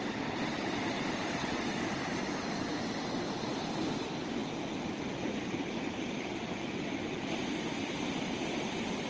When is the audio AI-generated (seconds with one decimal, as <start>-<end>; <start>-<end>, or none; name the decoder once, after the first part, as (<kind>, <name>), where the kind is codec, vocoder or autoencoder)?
none